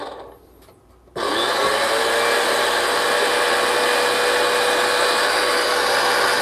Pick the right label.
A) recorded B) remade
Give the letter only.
A